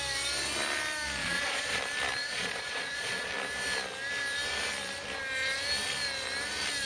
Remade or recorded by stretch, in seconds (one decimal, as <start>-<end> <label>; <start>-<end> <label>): 0.0-1.2 recorded; 1.2-1.8 remade; 1.8-2.2 recorded; 2.2-3.3 remade; 3.3-6.9 recorded